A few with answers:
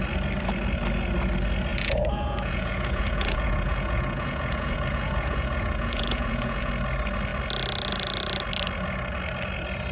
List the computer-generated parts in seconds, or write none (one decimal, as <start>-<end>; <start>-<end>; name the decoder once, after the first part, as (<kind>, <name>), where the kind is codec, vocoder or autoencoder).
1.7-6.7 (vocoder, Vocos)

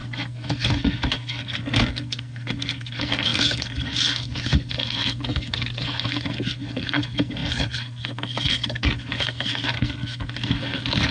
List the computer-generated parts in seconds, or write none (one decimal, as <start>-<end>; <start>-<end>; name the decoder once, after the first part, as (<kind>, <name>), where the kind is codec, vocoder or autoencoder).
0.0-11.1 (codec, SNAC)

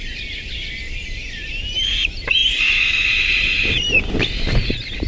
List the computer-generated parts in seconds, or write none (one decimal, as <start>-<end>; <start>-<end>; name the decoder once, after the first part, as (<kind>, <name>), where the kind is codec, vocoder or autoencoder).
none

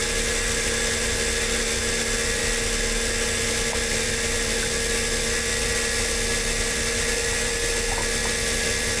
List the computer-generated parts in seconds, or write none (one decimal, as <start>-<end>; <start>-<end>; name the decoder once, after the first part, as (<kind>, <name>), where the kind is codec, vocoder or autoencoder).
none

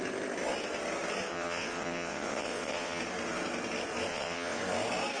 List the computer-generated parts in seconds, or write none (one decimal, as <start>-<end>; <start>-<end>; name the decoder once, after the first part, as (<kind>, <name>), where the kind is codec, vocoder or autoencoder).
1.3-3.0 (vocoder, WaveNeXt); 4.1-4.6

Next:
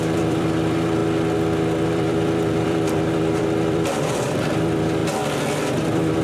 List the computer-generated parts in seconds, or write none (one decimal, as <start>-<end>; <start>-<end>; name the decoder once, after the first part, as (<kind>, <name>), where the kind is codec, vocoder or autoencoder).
0.0-1.0 (vocoder, BigVGAN v2); 1.9-5.0; 5.6-6.2